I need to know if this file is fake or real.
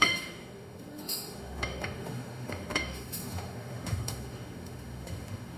fake